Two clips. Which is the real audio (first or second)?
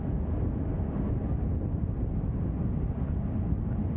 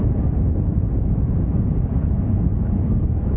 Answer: first